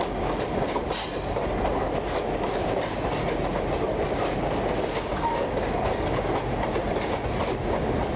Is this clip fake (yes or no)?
no